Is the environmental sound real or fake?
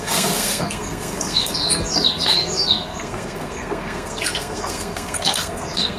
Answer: fake